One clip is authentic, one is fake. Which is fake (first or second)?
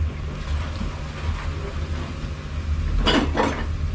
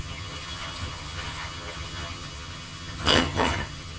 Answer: second